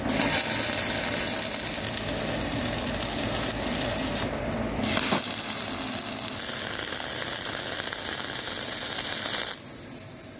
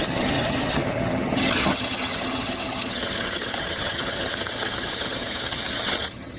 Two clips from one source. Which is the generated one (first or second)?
second